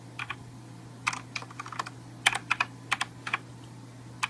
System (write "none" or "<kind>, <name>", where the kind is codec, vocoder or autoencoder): none